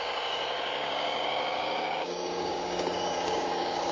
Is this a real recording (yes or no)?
no